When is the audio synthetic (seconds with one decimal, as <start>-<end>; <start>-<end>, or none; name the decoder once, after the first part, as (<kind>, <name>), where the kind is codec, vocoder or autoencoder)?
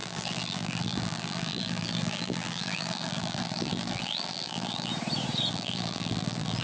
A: 0.0-4.9 (vocoder, BigVGAN v2); 5.5-6.6